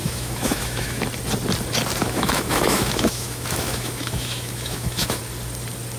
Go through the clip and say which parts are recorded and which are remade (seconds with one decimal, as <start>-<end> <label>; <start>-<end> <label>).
0.0-1.0 remade; 1.0-2.0 recorded; 2.0-5.2 remade; 5.2-6.0 recorded